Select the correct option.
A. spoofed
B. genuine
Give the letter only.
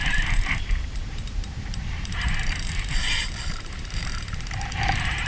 A